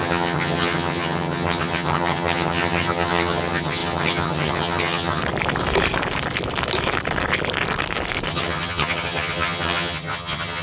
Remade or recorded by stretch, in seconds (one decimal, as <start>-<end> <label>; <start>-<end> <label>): 0.0-5.2 remade; 5.2-8.3 recorded; 8.3-10.6 remade